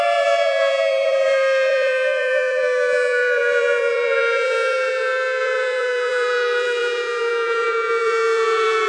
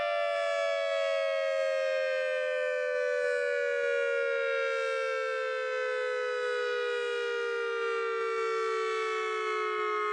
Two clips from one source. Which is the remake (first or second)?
first